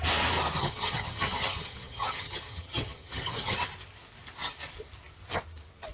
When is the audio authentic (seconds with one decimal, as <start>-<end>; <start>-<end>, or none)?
0.0-0.6; 3.6-5.9